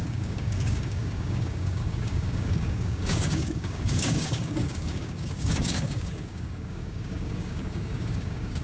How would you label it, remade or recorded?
remade